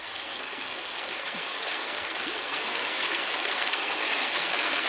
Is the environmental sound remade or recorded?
remade